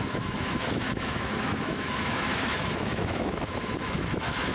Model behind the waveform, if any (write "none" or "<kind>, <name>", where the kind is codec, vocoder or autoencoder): autoencoder, DAC-VAE